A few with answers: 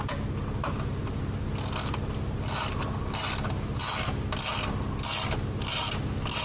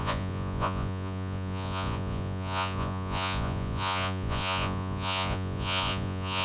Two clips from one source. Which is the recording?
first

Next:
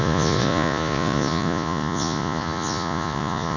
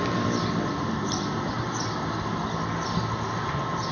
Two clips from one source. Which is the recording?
second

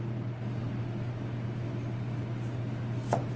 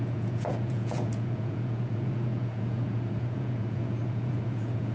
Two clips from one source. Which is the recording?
first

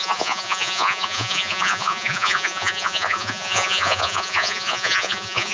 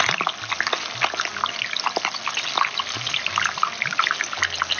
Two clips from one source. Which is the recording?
second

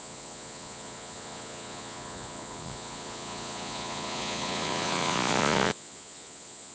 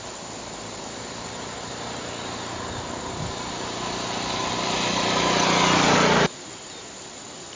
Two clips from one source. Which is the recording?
second